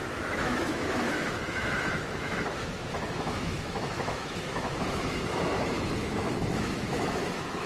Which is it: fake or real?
fake